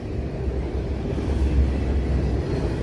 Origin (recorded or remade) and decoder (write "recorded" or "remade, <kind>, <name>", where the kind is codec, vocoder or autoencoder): recorded